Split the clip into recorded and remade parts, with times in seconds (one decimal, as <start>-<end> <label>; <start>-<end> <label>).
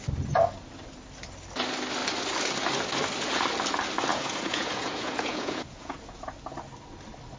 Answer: 0.0-4.1 recorded; 4.1-6.3 remade; 6.3-7.4 recorded